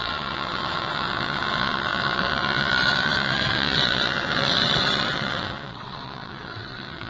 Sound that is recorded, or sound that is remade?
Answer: remade